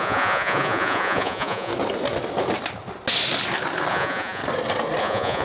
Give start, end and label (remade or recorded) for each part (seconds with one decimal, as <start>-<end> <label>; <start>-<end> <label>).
0.0-1.7 remade; 1.7-3.9 recorded; 3.9-4.4 remade; 4.4-5.0 recorded; 5.0-5.4 remade